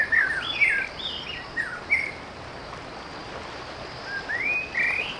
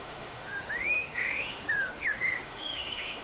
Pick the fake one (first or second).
second